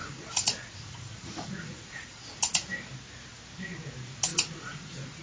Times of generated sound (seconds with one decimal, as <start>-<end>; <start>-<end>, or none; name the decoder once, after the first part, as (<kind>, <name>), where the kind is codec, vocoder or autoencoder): 0.0-2.7 (vocoder, Vocos); 4.3-5.2